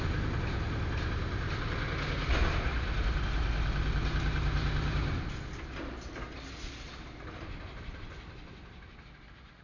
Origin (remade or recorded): recorded